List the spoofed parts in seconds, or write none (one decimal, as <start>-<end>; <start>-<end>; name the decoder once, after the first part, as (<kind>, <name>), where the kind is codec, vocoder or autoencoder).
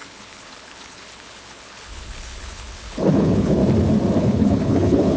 0.0-3.6 (codec, HILCodec); 4.2-5.2